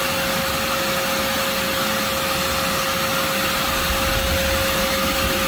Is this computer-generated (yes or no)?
no